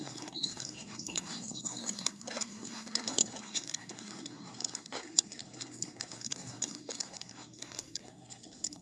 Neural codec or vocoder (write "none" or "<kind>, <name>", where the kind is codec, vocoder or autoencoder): codec, SNAC